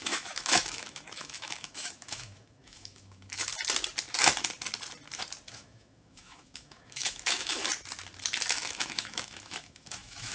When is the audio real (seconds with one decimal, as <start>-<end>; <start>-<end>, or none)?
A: 3.5-5.5; 7.6-8.5